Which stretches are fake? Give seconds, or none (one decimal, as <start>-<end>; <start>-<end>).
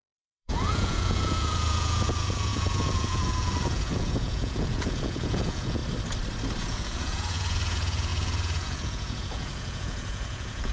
0.0-5.8; 6.6-10.7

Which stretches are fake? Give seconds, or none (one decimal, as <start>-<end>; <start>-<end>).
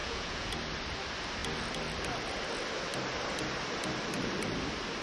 0.0-0.5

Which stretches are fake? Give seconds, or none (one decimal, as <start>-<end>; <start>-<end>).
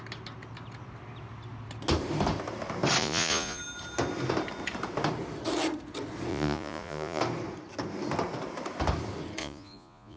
3.0-3.6; 6.3-7.2; 9.4-10.2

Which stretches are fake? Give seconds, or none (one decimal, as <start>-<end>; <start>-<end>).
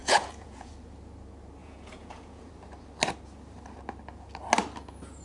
0.0-0.7; 1.6-2.5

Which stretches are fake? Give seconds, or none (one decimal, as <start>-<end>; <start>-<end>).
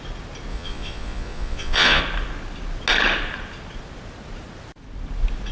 0.5-2.0